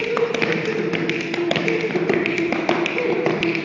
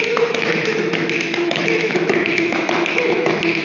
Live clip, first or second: first